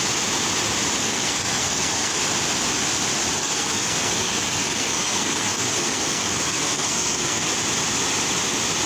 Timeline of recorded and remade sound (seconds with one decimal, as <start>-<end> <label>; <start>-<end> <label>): 0.0-1.0 recorded; 1.0-2.2 remade; 2.2-3.4 recorded; 3.4-7.5 remade; 7.5-8.9 recorded